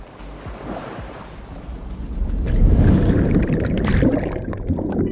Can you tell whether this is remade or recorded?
remade